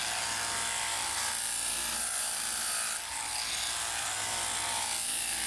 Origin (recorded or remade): recorded